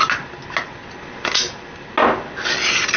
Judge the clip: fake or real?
real